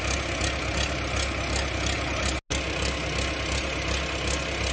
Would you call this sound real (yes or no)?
yes